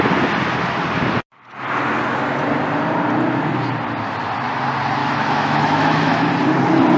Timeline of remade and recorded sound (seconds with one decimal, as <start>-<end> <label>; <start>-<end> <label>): 0.0-5.0 recorded; 5.0-6.3 remade; 6.3-7.0 recorded

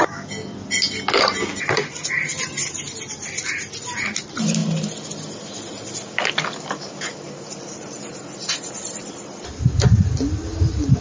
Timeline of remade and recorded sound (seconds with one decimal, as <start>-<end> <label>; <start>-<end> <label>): 0.0-11.0 recorded

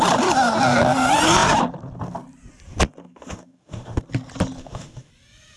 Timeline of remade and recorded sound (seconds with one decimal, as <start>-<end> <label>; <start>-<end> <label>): 0.0-3.0 recorded; 3.0-4.0 remade; 4.0-4.6 recorded; 4.6-5.1 remade; 5.1-5.6 recorded

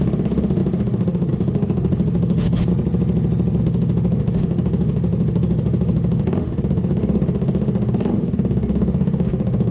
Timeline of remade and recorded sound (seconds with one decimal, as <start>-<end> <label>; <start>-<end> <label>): 0.0-2.7 remade; 2.7-3.6 recorded; 3.6-9.7 remade